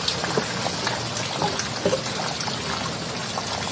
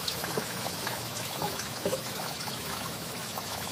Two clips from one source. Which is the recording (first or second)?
first